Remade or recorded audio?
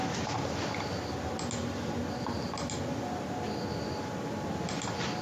recorded